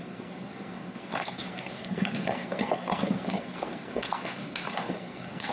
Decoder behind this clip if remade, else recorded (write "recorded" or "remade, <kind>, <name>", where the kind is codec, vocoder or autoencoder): remade, codec, SNAC